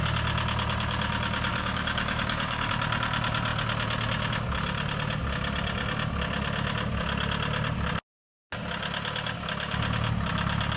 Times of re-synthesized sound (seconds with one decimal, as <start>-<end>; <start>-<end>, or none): 1.5-2.7